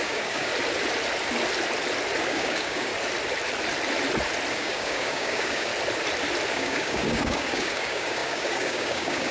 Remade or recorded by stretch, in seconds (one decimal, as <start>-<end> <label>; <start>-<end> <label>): 0.0-0.5 remade; 0.5-2.2 recorded; 2.2-2.9 remade; 2.9-4.5 recorded; 4.5-5.7 remade; 5.7-6.5 recorded; 6.5-9.3 remade